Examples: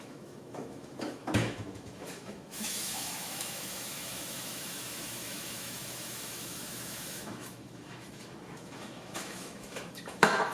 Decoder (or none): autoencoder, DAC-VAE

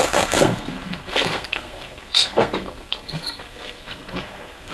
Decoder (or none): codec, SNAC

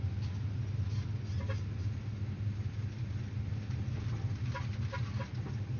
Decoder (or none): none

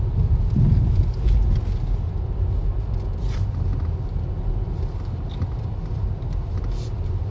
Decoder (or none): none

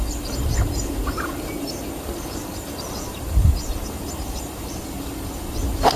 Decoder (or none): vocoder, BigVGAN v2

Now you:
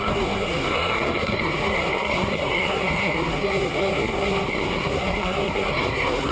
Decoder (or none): codec, SNAC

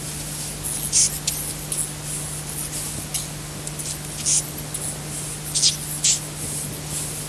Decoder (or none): none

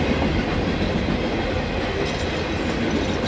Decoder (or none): none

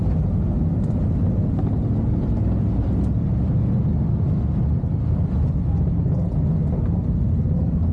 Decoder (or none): none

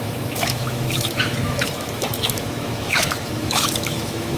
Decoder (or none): autoencoder, DAC-VAE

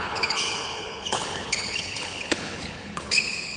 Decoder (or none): codec, HILCodec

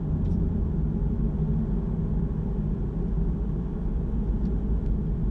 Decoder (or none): none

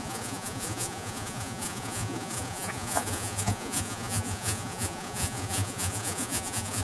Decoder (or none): vocoder, Vocos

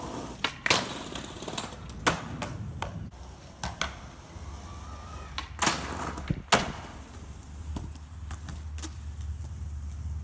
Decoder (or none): none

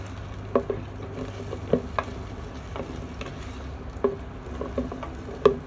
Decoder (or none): none